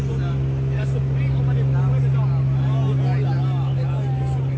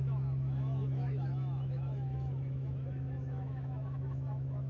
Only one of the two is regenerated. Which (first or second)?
second